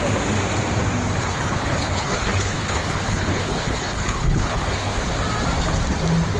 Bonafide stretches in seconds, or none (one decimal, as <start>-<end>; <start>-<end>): 0.0-1.3; 5.1-6.4